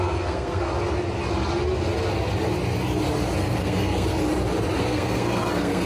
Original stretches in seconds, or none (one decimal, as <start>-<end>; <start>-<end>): 0.7-3.4; 4.1-4.8